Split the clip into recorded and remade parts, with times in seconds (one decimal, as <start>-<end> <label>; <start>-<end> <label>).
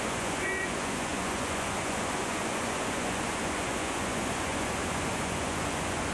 0.0-6.1 remade